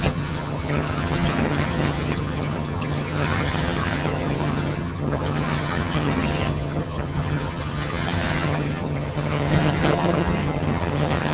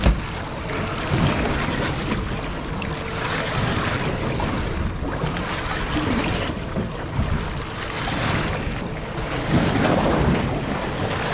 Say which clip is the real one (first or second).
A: second